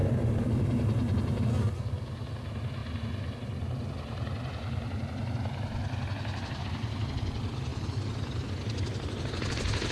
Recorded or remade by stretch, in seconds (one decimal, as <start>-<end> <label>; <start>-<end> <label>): 0.0-9.9 recorded